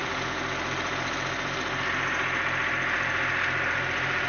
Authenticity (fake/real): fake